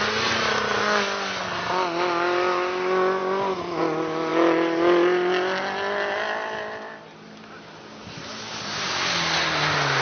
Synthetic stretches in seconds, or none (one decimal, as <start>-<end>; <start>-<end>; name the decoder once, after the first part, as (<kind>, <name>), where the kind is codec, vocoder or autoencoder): none